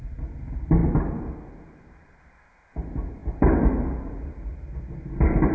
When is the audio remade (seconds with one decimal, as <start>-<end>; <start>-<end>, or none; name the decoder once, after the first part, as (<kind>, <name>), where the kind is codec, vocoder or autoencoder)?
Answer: none